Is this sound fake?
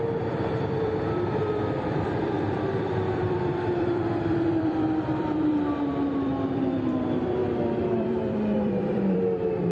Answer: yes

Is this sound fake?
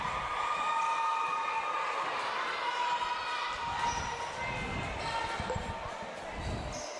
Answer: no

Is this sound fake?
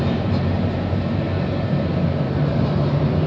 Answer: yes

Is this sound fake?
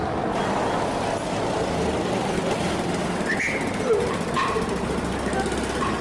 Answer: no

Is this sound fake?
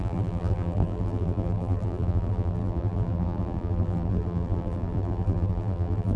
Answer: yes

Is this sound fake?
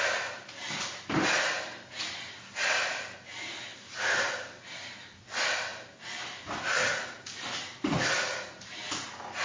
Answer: no